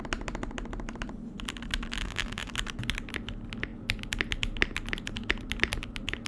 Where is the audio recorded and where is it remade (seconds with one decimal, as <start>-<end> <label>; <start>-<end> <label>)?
0.0-2.0 recorded; 2.0-2.5 remade; 2.5-6.3 recorded